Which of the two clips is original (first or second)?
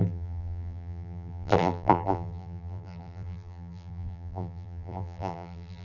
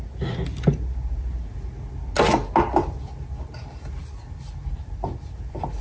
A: second